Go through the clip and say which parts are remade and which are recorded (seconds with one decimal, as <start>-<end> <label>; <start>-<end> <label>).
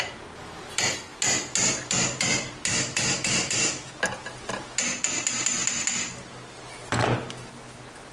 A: 0.0-2.7 recorded; 2.7-3.9 remade; 3.9-8.1 recorded